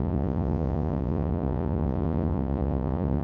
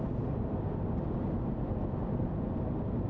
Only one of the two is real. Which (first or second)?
second